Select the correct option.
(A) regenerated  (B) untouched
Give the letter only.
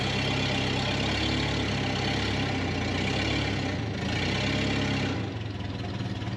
B